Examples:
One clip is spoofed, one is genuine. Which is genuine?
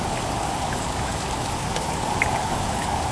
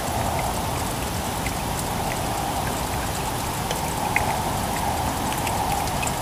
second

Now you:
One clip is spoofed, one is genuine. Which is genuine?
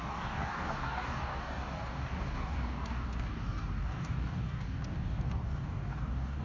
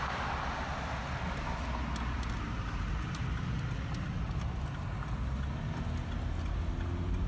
second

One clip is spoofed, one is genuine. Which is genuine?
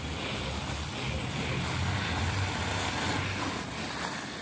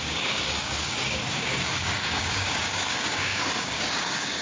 first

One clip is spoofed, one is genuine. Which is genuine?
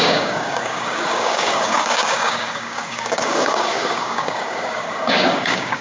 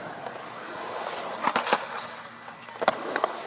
second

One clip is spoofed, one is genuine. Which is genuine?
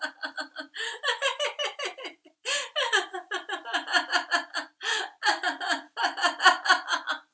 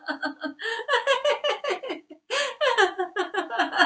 first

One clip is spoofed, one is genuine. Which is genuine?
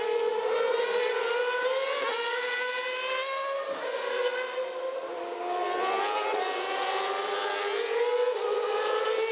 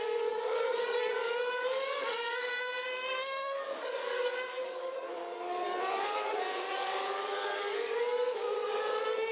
first